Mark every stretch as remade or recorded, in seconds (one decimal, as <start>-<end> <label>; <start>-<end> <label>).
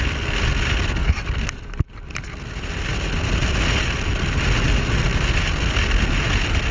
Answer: 0.0-1.0 recorded; 1.0-1.6 remade; 1.6-6.7 recorded